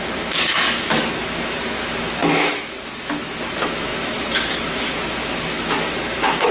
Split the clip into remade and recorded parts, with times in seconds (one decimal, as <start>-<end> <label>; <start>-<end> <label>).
0.0-6.5 remade